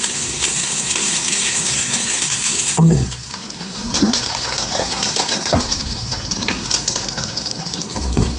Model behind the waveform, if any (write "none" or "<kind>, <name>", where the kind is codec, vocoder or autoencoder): codec, SNAC